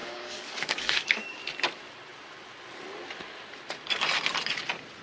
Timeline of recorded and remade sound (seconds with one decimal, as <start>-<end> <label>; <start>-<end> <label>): 0.0-1.4 remade; 1.4-5.0 recorded